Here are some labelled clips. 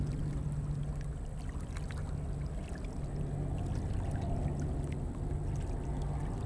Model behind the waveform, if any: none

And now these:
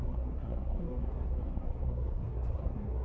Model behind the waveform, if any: codec, SNAC